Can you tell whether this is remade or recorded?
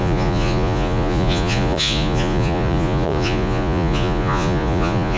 remade